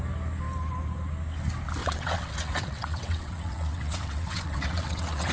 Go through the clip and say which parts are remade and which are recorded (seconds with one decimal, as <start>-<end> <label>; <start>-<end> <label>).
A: 0.0-1.8 recorded; 1.8-5.3 remade